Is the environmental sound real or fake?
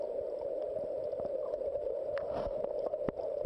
real